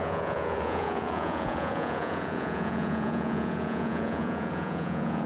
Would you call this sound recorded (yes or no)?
no